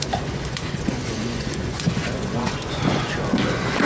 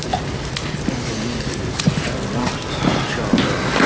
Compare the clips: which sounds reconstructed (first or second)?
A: first